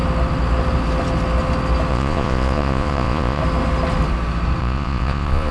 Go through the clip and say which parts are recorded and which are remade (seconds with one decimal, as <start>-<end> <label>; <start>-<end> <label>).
0.0-1.9 recorded; 1.9-3.4 remade; 3.4-4.6 recorded; 4.6-5.5 remade

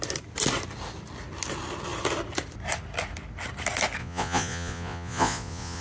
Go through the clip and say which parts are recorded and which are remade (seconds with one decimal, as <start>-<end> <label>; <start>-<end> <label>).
0.0-4.0 recorded; 4.0-5.8 remade

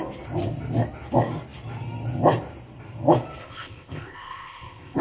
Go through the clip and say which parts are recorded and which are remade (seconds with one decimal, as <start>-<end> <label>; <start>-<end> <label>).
0.0-3.4 recorded; 3.4-5.0 remade

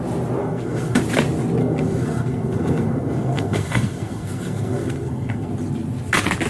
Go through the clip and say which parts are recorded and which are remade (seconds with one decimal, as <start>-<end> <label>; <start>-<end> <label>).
0.0-0.4 recorded; 0.4-1.0 remade; 1.0-1.6 recorded; 1.6-5.5 remade; 5.5-6.5 recorded